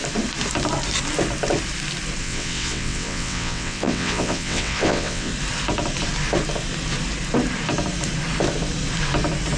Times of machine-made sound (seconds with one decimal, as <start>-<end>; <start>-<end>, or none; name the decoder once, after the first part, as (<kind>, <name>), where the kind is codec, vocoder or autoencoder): 2.2-5.3 (vocoder, WaveNeXt)